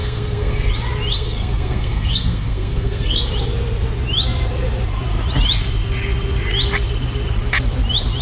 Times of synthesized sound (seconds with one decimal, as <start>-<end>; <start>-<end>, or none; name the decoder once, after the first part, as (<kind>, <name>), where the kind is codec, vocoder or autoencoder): 0.0-0.7 (codec, SNAC); 1.1-3.3